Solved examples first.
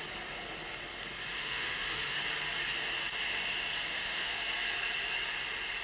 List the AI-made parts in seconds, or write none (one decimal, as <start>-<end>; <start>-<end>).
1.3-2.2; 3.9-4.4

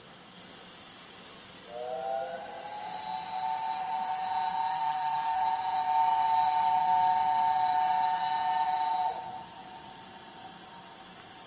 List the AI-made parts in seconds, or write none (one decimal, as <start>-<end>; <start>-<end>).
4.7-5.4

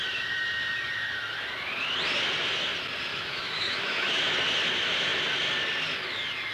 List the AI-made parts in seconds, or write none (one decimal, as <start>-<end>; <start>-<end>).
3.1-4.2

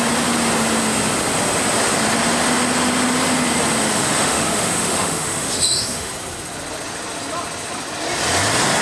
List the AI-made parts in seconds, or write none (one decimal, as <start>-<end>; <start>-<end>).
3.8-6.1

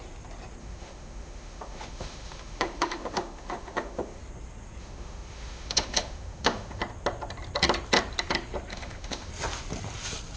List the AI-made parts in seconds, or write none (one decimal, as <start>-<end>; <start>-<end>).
0.6-4.2; 4.8-6.8; 8.7-9.3

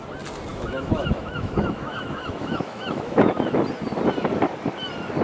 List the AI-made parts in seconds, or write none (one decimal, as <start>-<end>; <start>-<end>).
0.5-3.6

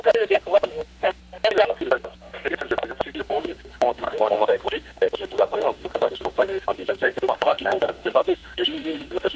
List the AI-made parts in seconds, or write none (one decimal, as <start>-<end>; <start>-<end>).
0.0-1.2; 3.2-9.4

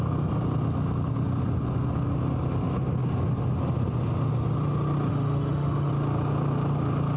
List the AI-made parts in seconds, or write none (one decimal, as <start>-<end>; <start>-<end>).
5.1-5.9